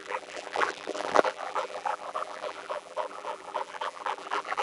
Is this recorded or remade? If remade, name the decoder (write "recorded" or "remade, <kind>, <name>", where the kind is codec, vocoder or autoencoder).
remade, vocoder, BigVGAN v2